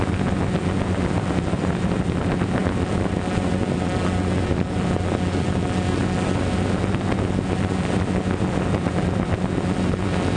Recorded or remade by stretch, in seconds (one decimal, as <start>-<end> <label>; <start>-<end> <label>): 0.0-10.4 recorded